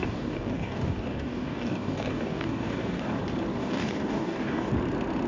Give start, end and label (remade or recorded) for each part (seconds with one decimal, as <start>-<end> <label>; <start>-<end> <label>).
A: 0.0-3.2 remade; 3.2-3.6 recorded; 3.6-4.7 remade; 4.7-5.3 recorded